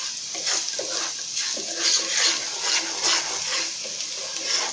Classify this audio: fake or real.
real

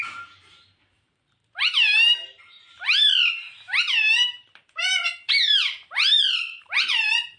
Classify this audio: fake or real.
fake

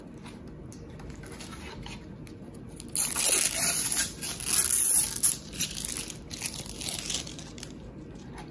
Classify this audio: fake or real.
real